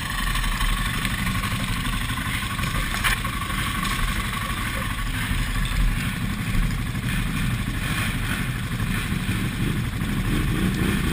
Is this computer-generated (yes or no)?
no